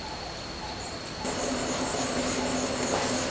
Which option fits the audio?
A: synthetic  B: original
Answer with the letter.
B